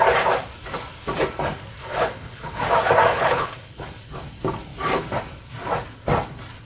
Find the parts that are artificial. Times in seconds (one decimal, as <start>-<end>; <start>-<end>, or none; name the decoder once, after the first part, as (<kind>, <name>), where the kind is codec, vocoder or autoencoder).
1.8-2.6 (codec, HILCodec); 3.1-3.8

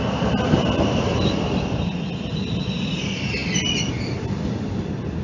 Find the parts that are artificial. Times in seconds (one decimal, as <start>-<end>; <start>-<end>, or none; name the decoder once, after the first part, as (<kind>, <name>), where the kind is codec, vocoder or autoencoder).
none

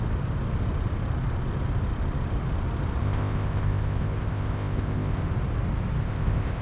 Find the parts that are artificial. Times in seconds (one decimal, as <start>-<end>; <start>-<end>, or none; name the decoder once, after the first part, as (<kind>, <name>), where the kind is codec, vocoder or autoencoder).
3.0-5.2 (codec, ZipCodec); 6.0-6.6

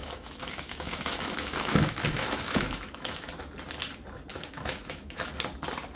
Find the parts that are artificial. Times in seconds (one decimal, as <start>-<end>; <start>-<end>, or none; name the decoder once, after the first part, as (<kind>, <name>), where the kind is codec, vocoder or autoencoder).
0.0-3.3 (autoencoder, DAC-VAE); 4.3-5.3

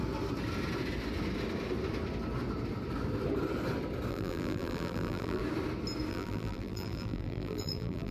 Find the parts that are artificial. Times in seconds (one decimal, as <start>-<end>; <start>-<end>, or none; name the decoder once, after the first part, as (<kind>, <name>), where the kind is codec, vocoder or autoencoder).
4.1-5.4 (vocoder, BigVGAN v2); 6.1-8.1